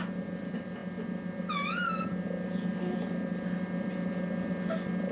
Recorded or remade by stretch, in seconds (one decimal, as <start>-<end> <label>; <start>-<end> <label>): 0.0-5.1 recorded